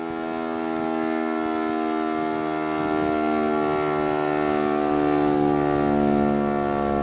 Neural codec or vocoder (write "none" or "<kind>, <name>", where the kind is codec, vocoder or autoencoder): none